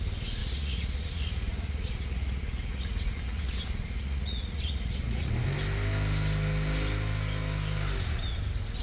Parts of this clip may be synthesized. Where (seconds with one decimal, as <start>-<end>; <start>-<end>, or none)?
0.4-5.3